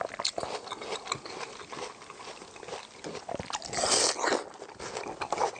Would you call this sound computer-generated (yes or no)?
no